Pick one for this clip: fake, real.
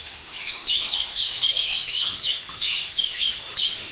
fake